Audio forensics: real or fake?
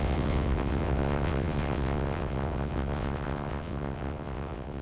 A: fake